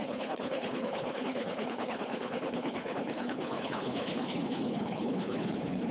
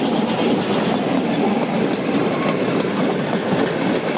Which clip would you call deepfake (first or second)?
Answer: first